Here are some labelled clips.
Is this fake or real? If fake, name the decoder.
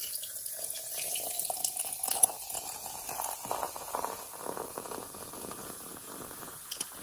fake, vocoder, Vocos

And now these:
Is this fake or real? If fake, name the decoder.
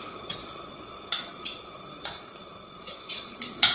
fake, vocoder, Vocos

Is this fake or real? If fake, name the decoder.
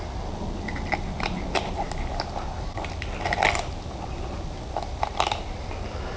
real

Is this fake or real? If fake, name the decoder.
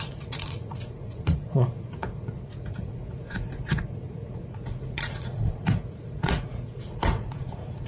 fake, vocoder, Vocos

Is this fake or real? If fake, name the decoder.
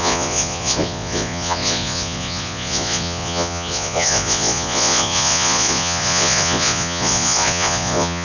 fake, vocoder, Vocos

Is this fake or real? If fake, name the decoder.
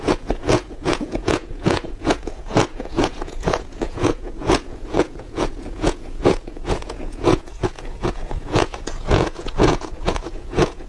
fake, vocoder, Vocos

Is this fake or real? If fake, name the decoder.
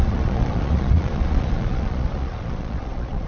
fake, vocoder, Vocos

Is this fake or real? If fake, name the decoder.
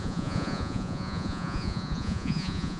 fake, vocoder, Vocos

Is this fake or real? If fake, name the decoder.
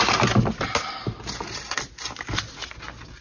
real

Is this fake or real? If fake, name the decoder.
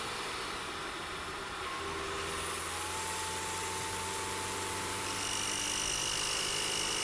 real